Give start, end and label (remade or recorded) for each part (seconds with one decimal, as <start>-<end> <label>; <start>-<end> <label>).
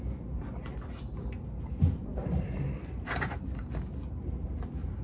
0.0-5.0 recorded